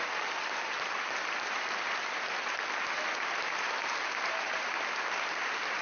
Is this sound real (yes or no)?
yes